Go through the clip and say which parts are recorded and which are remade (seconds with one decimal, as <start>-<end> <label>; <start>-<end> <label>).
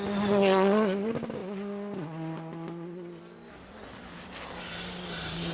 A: 0.0-5.5 recorded